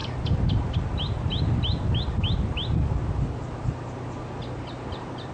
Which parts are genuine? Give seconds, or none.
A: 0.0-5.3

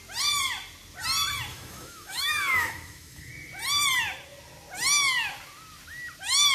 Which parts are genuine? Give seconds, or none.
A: 0.0-1.5; 3.3-6.5

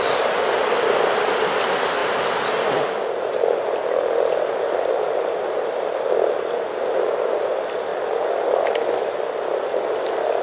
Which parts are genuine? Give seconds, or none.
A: 0.0-10.4